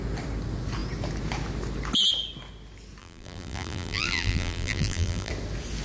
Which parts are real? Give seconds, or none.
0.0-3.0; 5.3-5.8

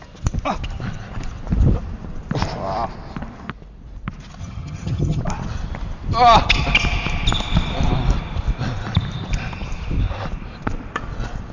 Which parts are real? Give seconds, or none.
0.0-4.4; 5.2-11.5

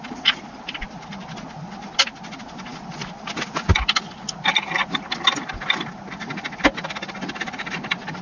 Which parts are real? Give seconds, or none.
0.0-8.2

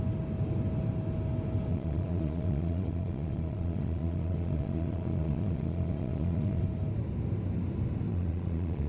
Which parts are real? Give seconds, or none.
0.0-1.7; 6.6-8.1

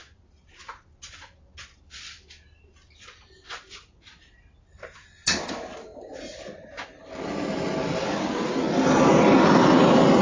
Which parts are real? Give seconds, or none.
0.0-10.2

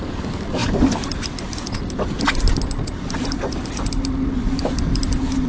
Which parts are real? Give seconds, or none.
0.0-5.5

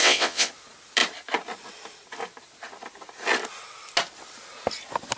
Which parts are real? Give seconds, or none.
0.5-5.2